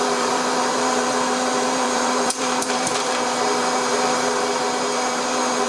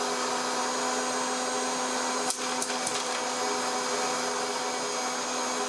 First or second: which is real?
second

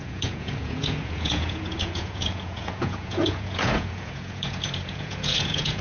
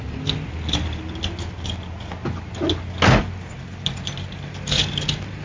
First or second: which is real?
second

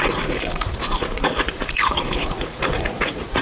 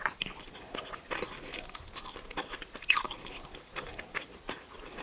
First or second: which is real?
second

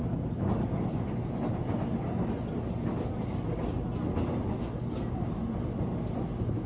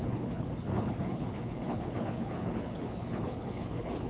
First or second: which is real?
first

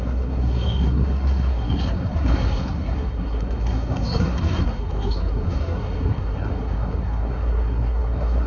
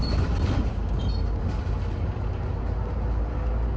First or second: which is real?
second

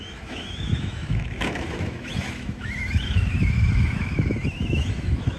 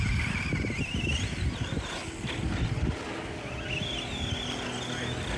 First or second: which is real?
second